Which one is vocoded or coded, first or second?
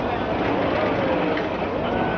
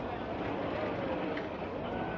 second